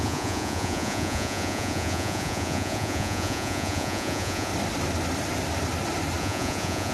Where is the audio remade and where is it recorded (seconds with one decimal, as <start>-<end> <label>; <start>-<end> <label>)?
0.0-4.5 remade; 4.5-6.2 recorded; 6.2-6.9 remade